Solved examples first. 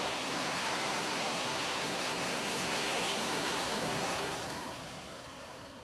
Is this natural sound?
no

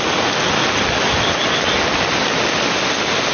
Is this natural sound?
yes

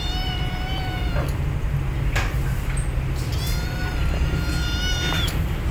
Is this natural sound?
yes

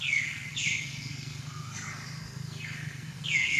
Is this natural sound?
no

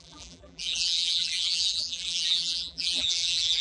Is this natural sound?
no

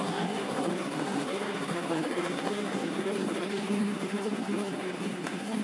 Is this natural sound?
no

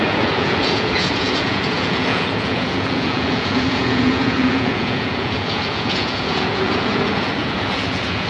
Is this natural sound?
no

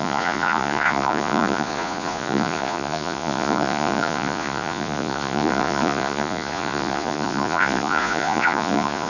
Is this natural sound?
no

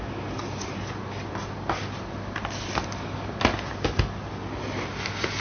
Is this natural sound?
yes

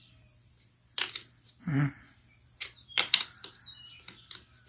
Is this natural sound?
no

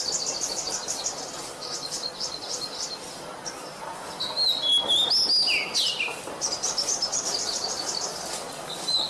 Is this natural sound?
yes